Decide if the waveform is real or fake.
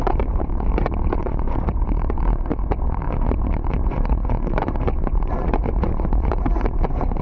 fake